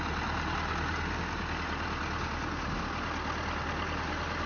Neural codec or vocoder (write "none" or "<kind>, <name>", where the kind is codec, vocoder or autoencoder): none